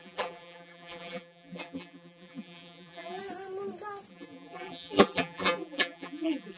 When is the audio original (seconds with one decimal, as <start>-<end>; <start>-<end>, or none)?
3.2-4.1